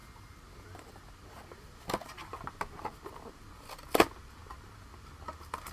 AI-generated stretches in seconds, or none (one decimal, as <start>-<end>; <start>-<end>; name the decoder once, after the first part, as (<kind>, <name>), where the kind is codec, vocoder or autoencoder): none

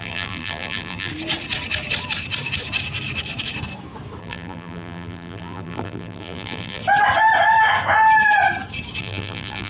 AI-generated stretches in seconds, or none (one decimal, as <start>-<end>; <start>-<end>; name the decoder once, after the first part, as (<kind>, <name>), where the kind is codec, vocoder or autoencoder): 0.0-1.1 (vocoder, BigVGAN v2); 4.2-6.8; 9.0-9.7

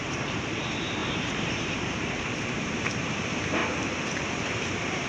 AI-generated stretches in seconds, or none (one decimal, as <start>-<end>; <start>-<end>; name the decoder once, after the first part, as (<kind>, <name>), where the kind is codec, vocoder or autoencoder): 0.0-3.6 (vocoder, BigVGAN v2); 4.3-5.1